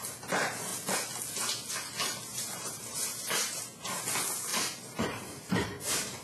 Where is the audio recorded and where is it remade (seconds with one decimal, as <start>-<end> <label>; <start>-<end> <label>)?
0.0-2.3 recorded; 2.3-3.6 remade; 3.6-4.5 recorded; 4.5-6.2 remade